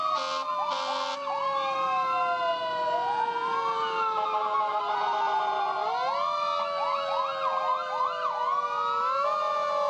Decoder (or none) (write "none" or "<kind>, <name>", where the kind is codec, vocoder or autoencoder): none